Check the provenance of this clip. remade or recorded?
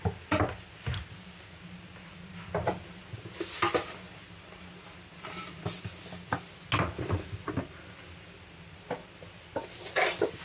recorded